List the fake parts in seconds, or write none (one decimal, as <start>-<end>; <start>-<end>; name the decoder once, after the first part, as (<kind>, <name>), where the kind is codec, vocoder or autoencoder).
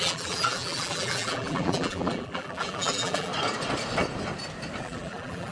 0.0-3.3 (vocoder, BigVGAN v2); 4.8-5.5